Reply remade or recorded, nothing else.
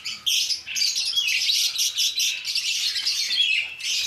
recorded